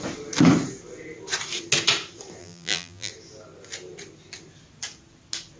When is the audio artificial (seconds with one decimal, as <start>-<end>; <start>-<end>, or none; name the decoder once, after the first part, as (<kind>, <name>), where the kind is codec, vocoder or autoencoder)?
2.4-3.1 (vocoder, BigVGAN v2)